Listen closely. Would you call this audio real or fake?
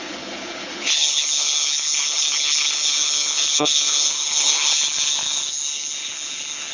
fake